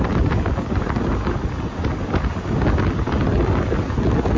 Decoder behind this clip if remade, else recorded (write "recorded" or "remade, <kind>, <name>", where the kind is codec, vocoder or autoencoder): recorded